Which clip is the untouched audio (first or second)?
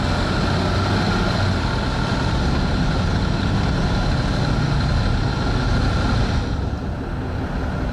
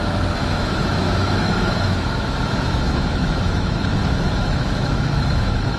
first